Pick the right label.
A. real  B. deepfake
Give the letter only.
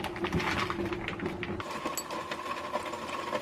A